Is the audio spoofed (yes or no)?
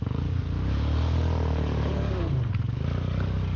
yes